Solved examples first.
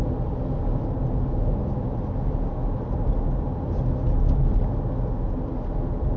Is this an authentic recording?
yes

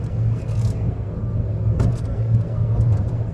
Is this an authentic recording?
no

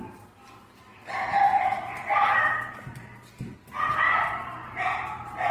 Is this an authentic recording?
yes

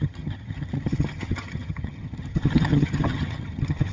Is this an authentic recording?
no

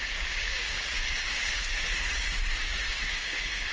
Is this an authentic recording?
no